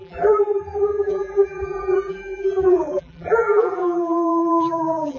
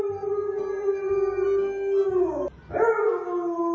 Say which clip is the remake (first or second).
first